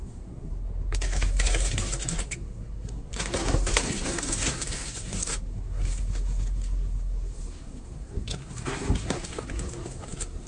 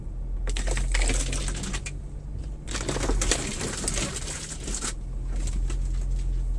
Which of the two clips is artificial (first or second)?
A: first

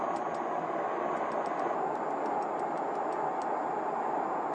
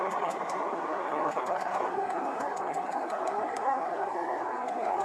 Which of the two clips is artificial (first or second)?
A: second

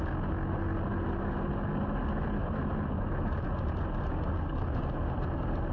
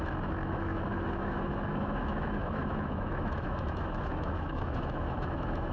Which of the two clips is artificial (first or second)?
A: second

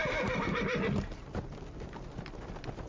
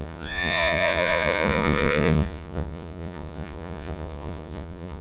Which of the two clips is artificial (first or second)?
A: second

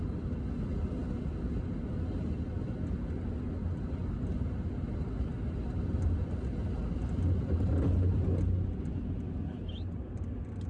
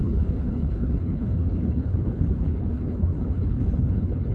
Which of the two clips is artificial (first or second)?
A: second